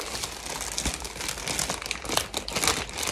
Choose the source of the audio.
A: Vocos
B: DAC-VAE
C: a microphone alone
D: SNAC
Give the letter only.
C